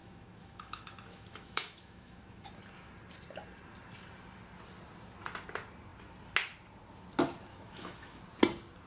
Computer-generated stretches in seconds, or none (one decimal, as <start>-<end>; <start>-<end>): 0.0-2.5; 7.5-8.2